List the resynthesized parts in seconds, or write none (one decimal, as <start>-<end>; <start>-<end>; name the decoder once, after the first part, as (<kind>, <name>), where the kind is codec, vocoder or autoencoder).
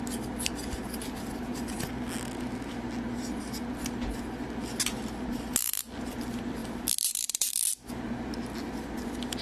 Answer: none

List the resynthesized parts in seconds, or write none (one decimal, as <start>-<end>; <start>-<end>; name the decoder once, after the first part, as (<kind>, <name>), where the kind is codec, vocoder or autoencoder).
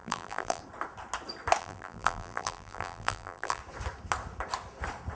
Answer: 0.0-0.6 (vocoder, BigVGAN v2); 1.6-3.6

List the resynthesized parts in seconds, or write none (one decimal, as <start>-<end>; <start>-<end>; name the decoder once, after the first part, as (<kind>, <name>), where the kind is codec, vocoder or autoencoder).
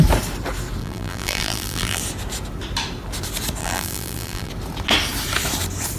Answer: 0.8-2.0 (vocoder, BigVGAN v2); 3.6-4.5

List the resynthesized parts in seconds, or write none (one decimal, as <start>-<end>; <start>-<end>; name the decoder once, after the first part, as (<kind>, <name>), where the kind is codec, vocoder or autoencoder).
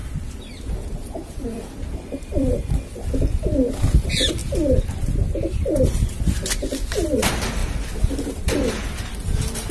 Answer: 0.0-2.7 (vocoder, BigVGAN v2)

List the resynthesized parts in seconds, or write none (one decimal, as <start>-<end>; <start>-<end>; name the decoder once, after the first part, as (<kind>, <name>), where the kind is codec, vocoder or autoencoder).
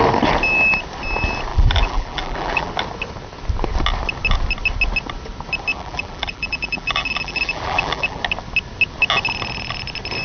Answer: 1.5-2.7 (vocoder, BigVGAN v2); 5.7-8.2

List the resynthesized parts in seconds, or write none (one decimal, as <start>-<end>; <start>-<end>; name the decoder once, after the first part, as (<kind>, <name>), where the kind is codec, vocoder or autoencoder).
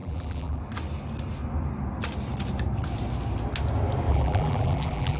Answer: 0.0-0.6 (vocoder, BigVGAN v2); 4.1-5.2